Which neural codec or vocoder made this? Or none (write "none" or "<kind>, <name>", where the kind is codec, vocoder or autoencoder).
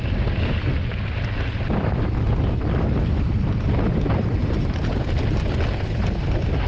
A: none